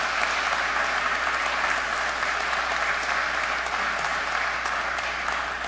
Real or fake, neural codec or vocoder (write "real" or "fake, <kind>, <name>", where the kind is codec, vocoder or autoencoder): real